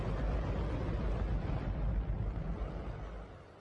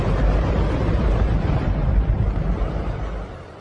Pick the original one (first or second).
first